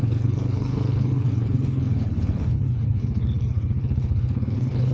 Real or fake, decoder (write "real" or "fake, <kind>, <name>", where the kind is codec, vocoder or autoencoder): fake, codec, HILCodec